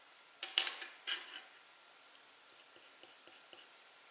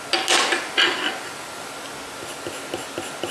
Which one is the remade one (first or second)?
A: first